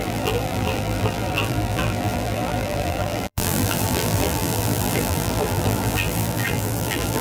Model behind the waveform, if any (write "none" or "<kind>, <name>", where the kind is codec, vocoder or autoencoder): vocoder, BigVGAN v2